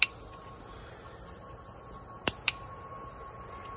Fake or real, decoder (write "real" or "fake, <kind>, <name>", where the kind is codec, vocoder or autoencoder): real